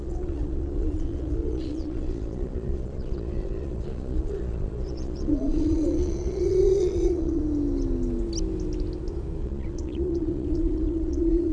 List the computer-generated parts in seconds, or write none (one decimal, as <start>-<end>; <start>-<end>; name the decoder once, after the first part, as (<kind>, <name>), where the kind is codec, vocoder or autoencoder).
0.0-7.4 (vocoder, Vocos); 9.4-11.5